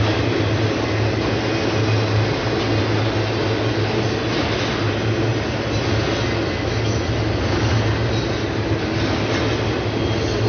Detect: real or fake real